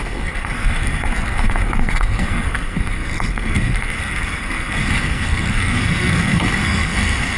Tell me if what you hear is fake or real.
fake